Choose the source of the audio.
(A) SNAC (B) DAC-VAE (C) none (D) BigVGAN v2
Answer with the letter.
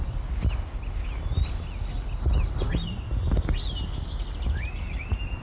C